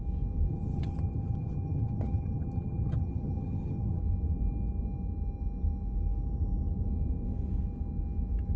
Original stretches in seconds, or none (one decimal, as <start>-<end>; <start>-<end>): 0.0-0.5; 4.0-8.6